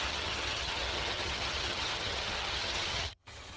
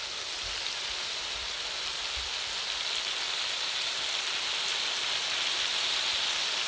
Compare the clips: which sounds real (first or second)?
second